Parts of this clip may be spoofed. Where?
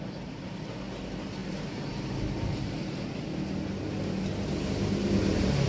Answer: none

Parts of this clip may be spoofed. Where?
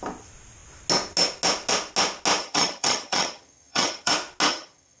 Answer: 2.4-4.1; 4.5-5.0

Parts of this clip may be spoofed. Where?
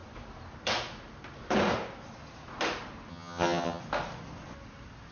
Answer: 3.1-3.8